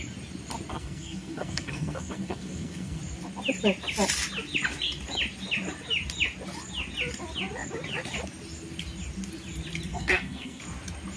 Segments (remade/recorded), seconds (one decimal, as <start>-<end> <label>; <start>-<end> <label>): 0.0-0.7 recorded; 0.7-3.0 remade; 3.0-9.9 recorded; 9.9-10.6 remade; 10.6-11.2 recorded